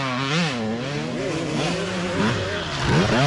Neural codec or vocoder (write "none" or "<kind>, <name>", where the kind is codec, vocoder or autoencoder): none